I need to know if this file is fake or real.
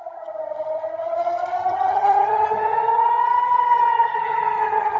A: fake